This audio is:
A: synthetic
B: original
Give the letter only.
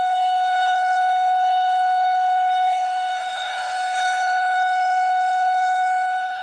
A